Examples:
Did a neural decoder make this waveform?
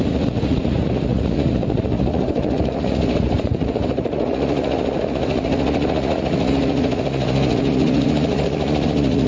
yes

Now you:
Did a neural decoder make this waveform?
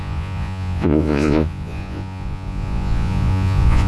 yes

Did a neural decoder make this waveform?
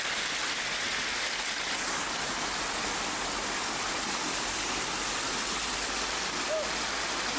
no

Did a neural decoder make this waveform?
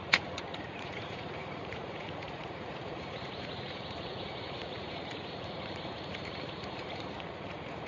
yes